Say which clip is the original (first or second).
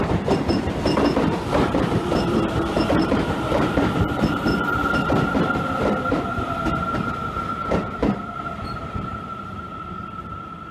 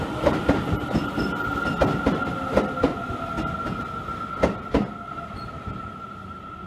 second